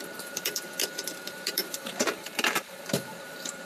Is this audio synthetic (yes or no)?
yes